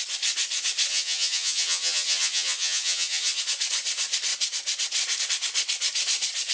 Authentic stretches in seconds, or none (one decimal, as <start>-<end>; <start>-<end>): 0.0-0.9; 3.4-6.5